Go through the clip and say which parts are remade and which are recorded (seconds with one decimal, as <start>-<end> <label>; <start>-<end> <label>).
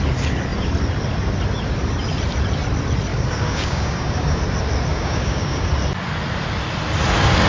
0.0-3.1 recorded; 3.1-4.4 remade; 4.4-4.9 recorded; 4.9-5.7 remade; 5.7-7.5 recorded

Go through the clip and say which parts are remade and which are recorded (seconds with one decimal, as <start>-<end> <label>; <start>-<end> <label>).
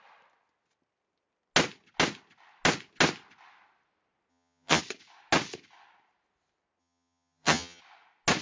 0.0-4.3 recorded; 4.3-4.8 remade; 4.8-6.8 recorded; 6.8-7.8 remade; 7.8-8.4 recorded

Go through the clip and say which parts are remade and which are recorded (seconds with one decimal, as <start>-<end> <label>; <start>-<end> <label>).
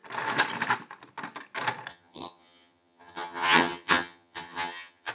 0.0-1.9 recorded; 1.9-5.1 remade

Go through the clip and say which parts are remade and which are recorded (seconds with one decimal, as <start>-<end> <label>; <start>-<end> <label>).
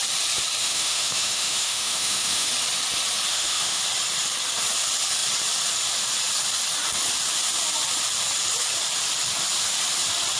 0.0-0.6 recorded; 0.6-2.5 remade; 2.5-3.3 recorded; 3.3-3.8 remade; 3.8-10.4 recorded